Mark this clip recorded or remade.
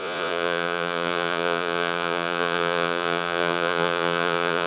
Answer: remade